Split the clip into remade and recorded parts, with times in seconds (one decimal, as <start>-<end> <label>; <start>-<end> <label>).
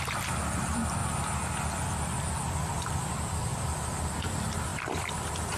0.0-4.7 recorded; 4.7-5.6 remade